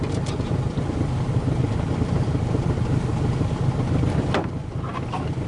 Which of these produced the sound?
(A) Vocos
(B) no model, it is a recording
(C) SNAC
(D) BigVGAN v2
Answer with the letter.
D